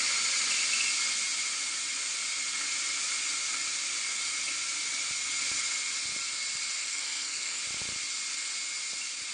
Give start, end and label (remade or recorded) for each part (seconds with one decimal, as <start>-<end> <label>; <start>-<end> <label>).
0.0-6.8 recorded; 6.8-7.6 remade; 7.6-9.3 recorded